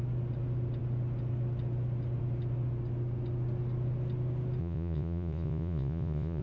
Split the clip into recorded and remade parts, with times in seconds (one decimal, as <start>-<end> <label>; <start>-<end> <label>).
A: 0.0-4.6 recorded; 4.6-6.4 remade